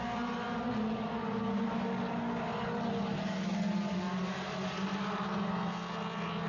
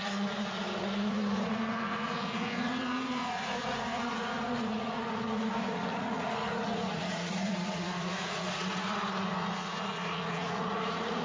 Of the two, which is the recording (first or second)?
first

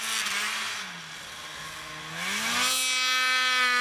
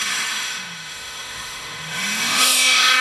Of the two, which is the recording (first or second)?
first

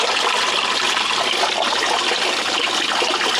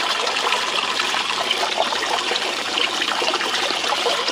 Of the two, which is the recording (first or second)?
first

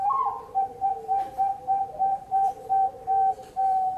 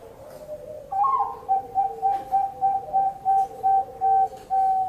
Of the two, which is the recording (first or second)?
second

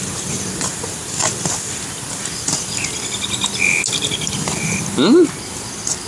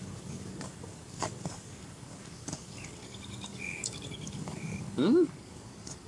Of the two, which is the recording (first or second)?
first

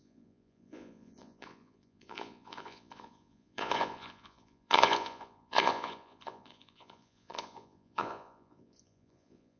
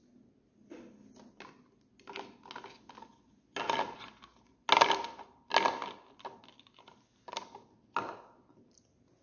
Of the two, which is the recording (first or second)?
second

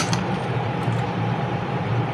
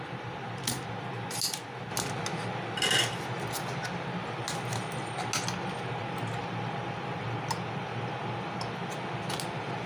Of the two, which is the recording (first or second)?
second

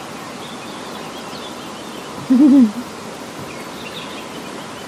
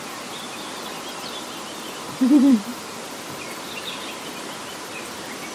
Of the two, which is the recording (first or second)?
first